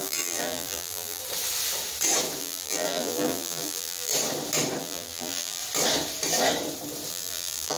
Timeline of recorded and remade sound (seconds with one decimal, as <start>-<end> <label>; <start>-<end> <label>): 0.0-1.2 remade; 1.2-2.4 recorded; 2.4-4.1 remade; 4.1-4.8 recorded; 4.8-5.6 remade; 5.6-7.1 recorded; 7.1-7.8 remade